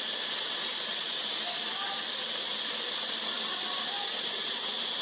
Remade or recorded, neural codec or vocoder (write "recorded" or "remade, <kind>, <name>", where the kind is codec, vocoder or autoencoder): recorded